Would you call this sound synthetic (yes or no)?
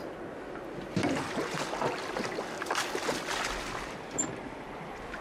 no